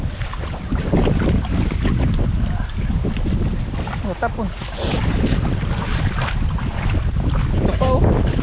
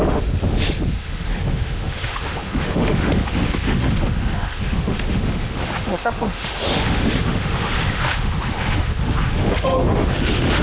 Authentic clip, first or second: first